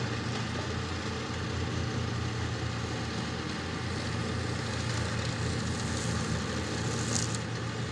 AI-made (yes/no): no